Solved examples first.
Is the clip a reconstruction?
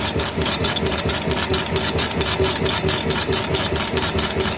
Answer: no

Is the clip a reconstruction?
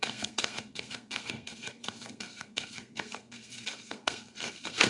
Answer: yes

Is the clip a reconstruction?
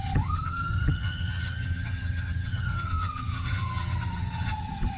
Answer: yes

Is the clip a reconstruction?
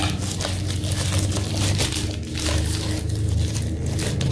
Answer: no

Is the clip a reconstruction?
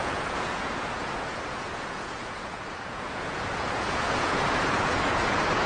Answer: yes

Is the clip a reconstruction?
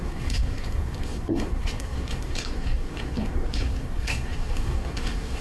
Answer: yes